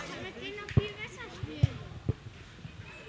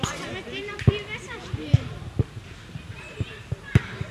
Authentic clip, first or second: first